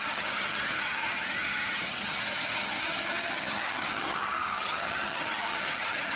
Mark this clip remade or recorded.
remade